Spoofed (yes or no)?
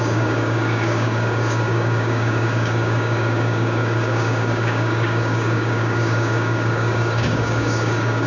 yes